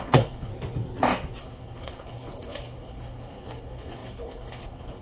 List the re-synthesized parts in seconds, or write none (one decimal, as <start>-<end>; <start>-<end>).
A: 0.0-0.5; 1.4-5.0